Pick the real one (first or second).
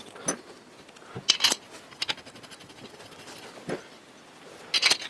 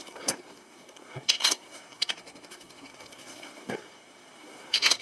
first